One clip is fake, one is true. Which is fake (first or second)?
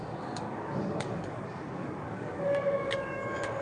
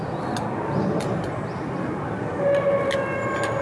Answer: first